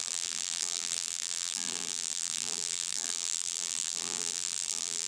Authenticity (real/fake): fake